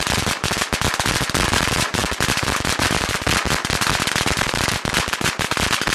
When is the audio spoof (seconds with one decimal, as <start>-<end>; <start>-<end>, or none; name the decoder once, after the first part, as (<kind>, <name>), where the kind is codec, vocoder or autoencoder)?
none